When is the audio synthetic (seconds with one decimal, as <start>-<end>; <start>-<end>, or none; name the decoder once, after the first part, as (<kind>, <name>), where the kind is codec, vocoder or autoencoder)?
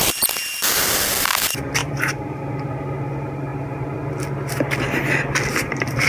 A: 1.8-2.4 (vocoder, BigVGAN v2)